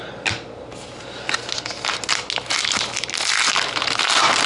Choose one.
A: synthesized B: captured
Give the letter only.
B